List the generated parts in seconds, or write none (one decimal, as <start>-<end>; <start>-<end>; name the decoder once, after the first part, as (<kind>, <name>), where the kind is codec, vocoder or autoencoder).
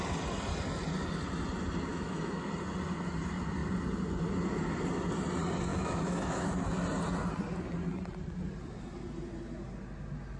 1.9-2.5 (autoencoder, DAC-VAE); 5.7-6.6